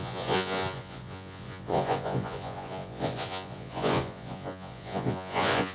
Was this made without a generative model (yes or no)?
no